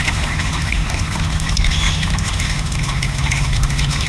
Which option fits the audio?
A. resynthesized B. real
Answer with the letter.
A